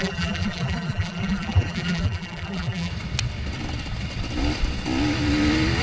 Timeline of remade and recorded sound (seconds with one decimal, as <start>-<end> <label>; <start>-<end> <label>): 0.0-2.9 remade; 2.9-5.8 recorded